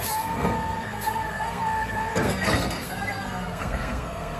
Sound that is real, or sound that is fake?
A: fake